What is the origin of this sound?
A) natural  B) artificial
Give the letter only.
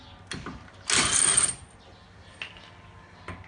A